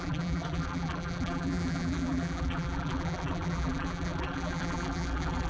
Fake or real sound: fake